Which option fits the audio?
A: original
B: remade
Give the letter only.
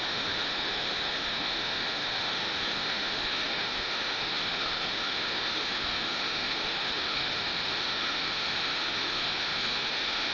B